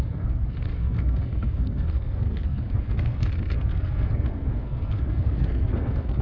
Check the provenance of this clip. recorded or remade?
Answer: remade